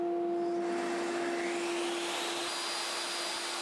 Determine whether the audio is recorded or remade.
recorded